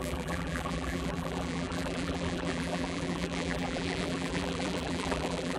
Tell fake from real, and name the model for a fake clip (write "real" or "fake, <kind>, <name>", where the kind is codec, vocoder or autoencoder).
fake, vocoder, BigVGAN v2